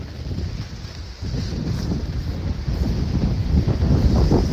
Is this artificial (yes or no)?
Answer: no